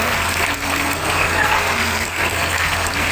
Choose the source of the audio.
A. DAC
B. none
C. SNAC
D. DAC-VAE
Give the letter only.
C